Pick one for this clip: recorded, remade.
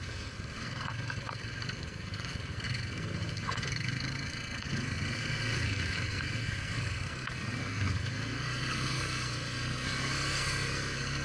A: remade